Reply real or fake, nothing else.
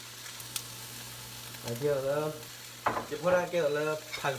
real